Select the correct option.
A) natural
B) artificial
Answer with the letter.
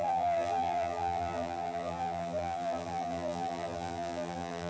B